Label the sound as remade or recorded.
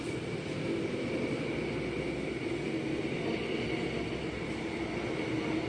recorded